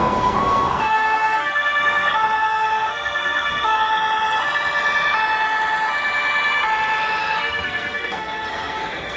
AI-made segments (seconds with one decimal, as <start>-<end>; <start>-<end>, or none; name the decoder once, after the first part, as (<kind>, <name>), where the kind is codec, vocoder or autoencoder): 0.0-3.9 (codec, SNAC); 7.2-9.2